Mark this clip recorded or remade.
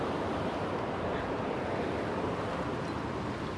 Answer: recorded